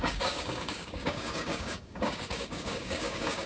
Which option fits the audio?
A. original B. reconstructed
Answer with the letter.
B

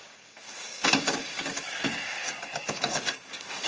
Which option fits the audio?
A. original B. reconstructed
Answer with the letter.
B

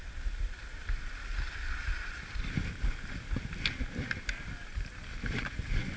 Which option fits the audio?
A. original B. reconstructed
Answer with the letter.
A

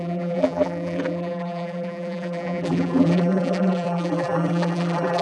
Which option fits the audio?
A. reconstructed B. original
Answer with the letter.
A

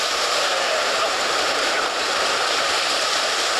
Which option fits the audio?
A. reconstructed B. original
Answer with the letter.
A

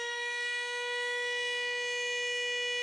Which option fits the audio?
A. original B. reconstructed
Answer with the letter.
A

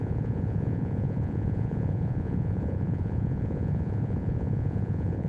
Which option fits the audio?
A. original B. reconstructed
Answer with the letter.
B